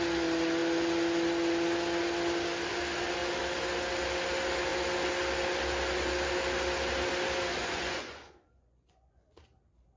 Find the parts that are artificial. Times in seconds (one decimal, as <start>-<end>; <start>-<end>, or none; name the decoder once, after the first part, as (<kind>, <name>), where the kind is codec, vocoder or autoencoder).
7.6-9.2 (vocoder, Vocos)